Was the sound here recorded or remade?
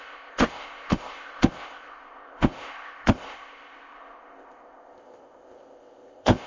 remade